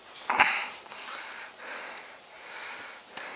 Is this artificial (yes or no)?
no